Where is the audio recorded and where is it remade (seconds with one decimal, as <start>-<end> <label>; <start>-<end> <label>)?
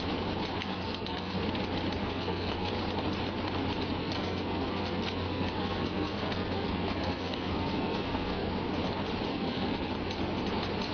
0.0-0.6 recorded; 0.6-1.4 remade; 1.4-2.0 recorded; 2.0-2.7 remade; 2.7-4.0 recorded; 4.0-8.5 remade; 8.5-9.3 recorded; 9.3-9.9 remade; 9.9-10.9 recorded